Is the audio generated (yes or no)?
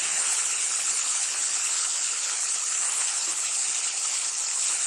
yes